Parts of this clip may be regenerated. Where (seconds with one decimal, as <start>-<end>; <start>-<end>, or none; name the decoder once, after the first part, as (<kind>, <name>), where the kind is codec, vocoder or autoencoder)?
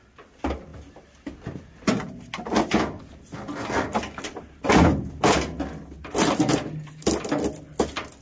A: none